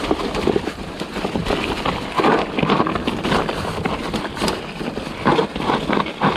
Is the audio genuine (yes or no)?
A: yes